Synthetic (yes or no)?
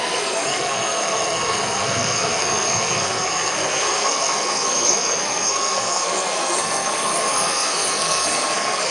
yes